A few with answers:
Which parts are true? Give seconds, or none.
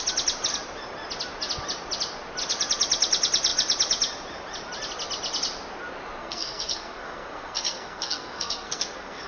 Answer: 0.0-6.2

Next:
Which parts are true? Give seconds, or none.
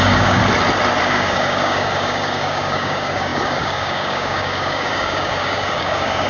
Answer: 0.4-1.0